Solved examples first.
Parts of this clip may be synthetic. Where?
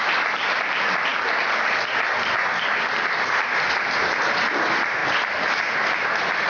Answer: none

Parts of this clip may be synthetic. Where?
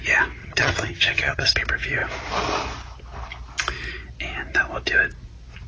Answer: 0.4-1.5 (vocoder, HiFi-GAN)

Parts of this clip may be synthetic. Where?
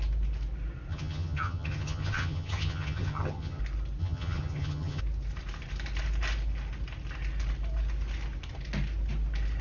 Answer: 0.9-3.6 (vocoder, HiFi-GAN); 4.0-5.0